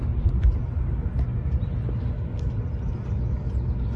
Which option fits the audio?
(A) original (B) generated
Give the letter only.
A